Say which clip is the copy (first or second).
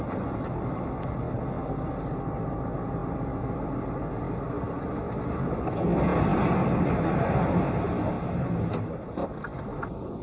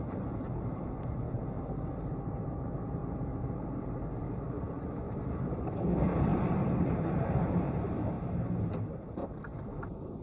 second